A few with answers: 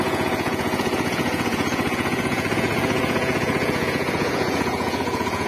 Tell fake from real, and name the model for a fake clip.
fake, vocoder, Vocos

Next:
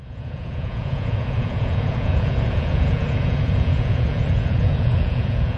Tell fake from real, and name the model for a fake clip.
fake, vocoder, Vocos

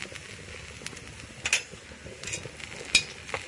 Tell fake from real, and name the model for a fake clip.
real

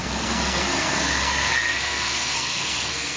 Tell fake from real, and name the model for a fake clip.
fake, codec, SNAC